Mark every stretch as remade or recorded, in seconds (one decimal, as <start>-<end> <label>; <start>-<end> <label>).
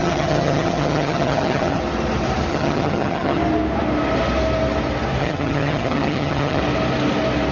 0.0-1.8 remade; 1.8-2.5 recorded; 2.5-3.4 remade; 3.4-5.2 recorded; 5.2-6.6 remade; 6.6-7.5 recorded